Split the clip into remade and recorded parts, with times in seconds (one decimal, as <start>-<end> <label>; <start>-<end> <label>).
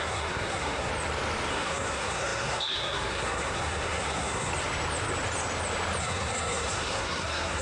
0.0-0.9 remade; 0.9-1.5 recorded; 1.5-4.5 remade; 4.5-6.0 recorded; 6.0-7.6 remade